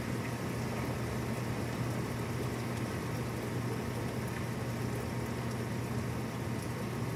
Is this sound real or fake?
real